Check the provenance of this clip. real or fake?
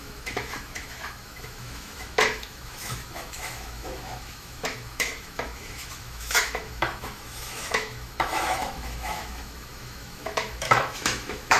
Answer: fake